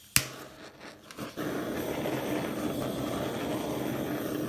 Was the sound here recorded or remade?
recorded